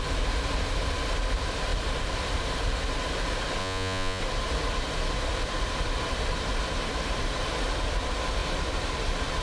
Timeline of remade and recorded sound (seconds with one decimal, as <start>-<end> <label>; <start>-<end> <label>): 0.0-3.6 recorded; 3.6-4.2 remade; 4.2-9.4 recorded